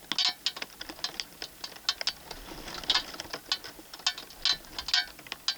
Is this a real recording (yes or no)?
yes